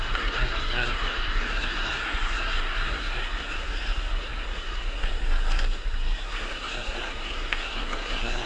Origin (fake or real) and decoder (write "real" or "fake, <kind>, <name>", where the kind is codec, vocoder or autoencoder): fake, codec, SNAC